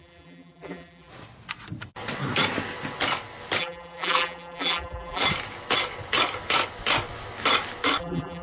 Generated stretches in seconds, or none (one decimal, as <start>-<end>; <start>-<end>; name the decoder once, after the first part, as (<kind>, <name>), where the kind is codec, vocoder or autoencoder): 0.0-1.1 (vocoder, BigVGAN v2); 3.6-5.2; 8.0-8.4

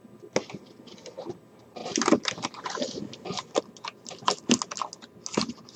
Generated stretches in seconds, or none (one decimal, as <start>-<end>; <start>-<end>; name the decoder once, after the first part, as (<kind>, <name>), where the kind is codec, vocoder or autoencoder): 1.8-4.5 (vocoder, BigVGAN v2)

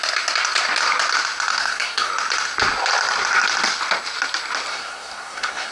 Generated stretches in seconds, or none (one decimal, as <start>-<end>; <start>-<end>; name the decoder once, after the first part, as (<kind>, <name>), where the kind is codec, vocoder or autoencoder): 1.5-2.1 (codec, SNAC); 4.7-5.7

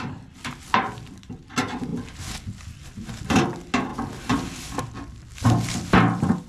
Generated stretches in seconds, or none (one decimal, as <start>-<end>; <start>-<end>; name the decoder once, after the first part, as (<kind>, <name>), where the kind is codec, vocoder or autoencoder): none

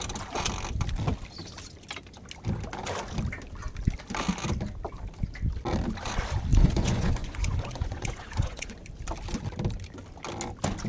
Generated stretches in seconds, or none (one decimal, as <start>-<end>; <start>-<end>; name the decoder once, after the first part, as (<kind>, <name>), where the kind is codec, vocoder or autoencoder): 6.5-8.8 (vocoder, Vocos)

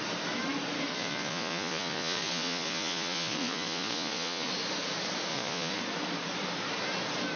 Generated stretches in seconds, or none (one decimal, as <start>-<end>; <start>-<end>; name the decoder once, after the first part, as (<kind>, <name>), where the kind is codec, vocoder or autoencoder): 0.9-4.5 (vocoder, Vocos); 5.3-5.8

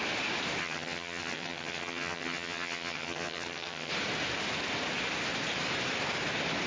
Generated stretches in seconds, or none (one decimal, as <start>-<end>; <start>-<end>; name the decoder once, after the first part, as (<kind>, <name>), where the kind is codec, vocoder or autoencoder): 0.6-3.9 (vocoder, HiFi-GAN)